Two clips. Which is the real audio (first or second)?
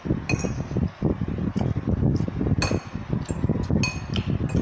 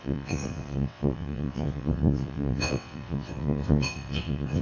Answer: first